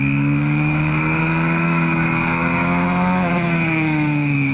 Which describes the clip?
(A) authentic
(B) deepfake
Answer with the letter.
B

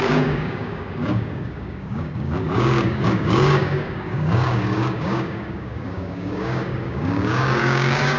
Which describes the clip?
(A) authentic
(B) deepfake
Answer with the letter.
B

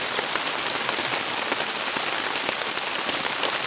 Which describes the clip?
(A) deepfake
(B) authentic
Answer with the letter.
B